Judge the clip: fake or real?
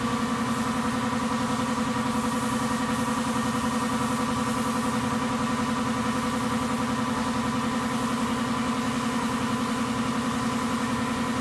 real